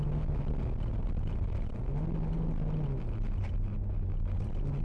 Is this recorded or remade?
recorded